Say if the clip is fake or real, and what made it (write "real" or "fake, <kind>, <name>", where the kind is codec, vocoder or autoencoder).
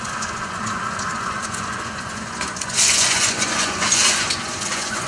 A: fake, vocoder, Vocos